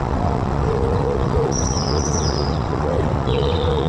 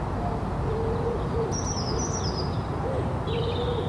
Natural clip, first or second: second